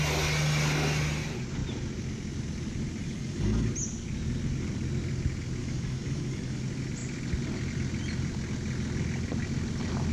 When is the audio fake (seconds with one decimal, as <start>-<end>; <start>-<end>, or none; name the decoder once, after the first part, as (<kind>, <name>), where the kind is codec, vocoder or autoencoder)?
3.0-3.7 (codec, DAC); 5.6-6.6